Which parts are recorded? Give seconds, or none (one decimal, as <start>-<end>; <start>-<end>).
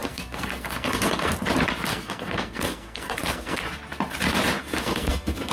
1.3-1.9; 3.6-4.6